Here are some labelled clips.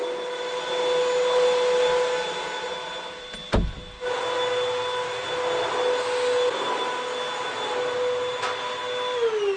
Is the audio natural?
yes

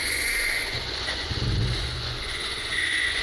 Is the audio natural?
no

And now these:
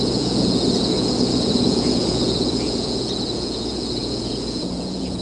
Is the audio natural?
no